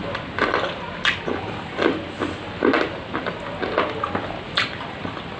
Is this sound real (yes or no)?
yes